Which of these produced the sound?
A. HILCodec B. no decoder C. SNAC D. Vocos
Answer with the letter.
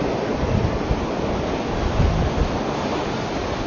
B